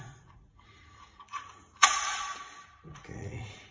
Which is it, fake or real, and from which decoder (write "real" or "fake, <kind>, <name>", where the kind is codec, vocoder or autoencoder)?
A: fake, vocoder, Vocos